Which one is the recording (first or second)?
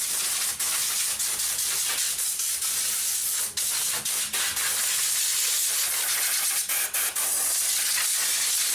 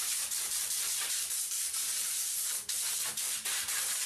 first